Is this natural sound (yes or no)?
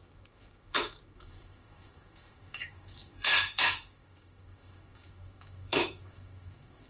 no